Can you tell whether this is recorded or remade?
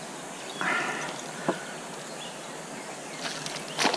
recorded